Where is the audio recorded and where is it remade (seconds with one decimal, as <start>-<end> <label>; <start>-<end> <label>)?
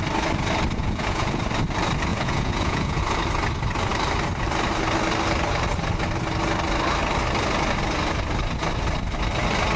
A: 0.0-0.8 recorded; 0.8-1.4 remade; 1.4-2.1 recorded; 2.1-3.0 remade; 3.0-9.8 recorded